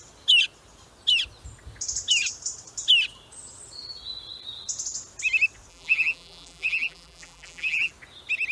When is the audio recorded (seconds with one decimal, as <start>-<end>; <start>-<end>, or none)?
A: 0.0-5.7; 7.9-8.5